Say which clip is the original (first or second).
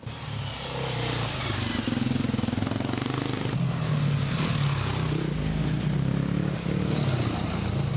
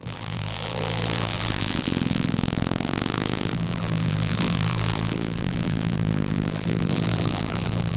first